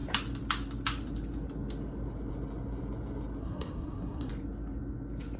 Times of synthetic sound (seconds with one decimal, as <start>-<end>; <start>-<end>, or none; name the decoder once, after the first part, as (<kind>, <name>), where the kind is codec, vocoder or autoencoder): 3.4-4.3 (codec, SNAC)